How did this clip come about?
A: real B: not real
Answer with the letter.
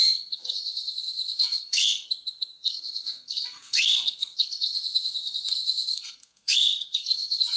B